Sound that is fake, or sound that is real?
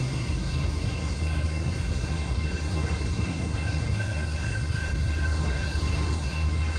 fake